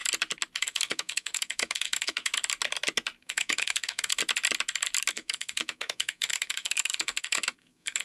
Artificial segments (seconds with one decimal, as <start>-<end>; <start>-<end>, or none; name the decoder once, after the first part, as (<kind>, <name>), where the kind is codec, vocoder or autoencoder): 0.6-2.3 (codec, SNAC); 3.2-4.2; 5.1-8.0